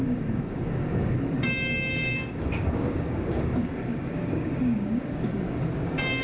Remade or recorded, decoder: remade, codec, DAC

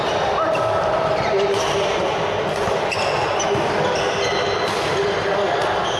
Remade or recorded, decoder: recorded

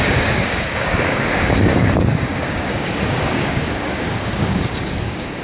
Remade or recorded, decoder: remade, codec, DAC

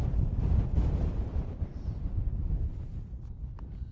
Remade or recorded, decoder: recorded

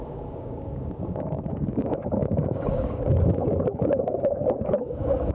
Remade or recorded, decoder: remade, codec, DAC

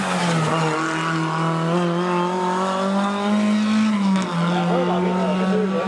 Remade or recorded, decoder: recorded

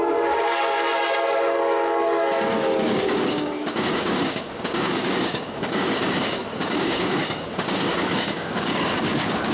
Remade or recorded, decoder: remade, codec, DAC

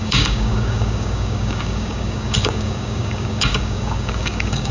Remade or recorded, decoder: remade, codec, DAC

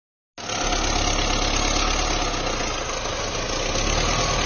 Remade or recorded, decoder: recorded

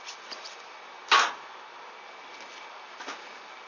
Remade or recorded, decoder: recorded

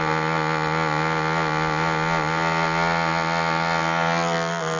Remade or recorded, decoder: recorded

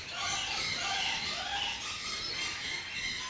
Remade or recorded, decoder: recorded